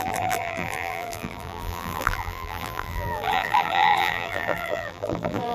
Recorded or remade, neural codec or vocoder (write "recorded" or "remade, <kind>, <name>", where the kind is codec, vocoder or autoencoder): remade, vocoder, BigVGAN v2